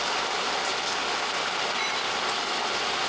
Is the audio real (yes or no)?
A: yes